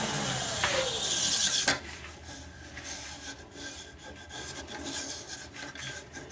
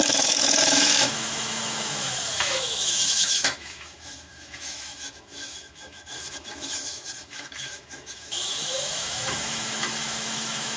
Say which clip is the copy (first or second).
second